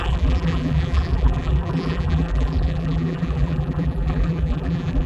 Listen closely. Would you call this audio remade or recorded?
remade